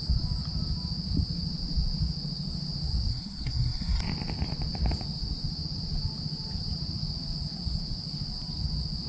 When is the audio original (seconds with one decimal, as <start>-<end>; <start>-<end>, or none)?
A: 0.0-3.1; 4.0-9.1